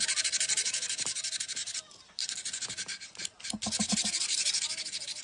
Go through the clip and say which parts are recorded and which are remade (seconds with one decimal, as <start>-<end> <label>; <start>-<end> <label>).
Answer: 0.0-5.2 recorded